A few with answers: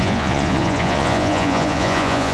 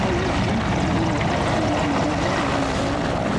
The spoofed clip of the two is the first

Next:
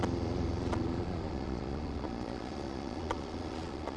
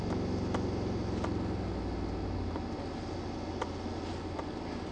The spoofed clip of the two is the first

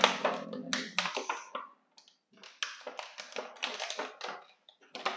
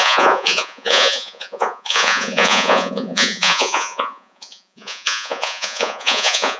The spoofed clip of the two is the second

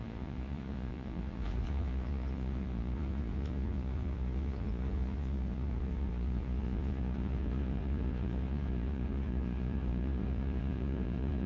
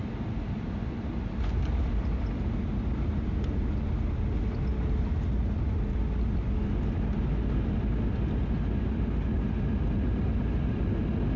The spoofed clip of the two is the first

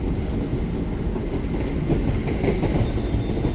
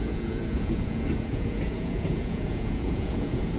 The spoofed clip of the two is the second